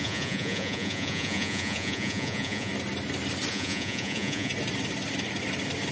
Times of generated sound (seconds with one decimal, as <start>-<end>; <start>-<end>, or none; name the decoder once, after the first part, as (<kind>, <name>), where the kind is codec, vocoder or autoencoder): 0.0-2.7 (vocoder, Vocos); 3.5-4.5